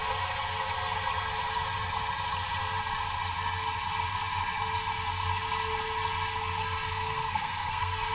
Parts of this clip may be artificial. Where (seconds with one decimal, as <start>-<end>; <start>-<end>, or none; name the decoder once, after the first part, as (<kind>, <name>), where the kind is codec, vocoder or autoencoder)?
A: 6.6-8.1 (codec, SNAC)